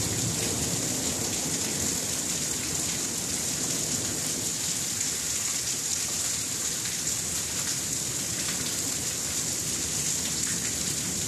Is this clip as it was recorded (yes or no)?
yes